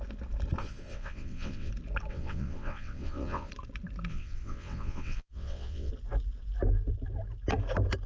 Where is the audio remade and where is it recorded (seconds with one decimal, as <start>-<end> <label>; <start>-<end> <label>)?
0.0-0.6 recorded; 0.6-1.7 remade; 1.7-2.1 recorded; 2.1-3.5 remade; 3.5-4.1 recorded; 4.1-5.9 remade; 5.9-8.1 recorded